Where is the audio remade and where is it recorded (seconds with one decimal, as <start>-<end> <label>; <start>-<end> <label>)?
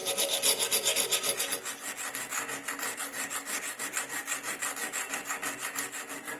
0.0-6.4 recorded